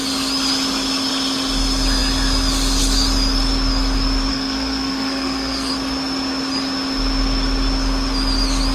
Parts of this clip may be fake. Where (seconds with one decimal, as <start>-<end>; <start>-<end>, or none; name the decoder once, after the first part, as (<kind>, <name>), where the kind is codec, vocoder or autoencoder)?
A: 4.3-5.7 (codec, SNAC)